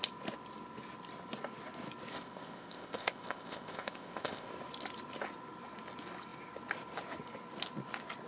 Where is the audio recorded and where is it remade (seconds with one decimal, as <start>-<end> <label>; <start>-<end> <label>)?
0.0-2.1 recorded; 2.1-4.5 remade; 4.5-8.3 recorded